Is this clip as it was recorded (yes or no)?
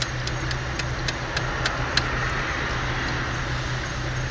yes